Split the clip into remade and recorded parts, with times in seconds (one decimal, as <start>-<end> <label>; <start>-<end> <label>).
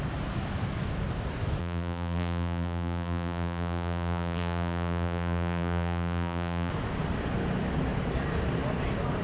0.0-1.6 recorded; 1.6-6.7 remade; 6.7-9.2 recorded